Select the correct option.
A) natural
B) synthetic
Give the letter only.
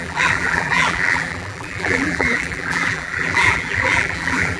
B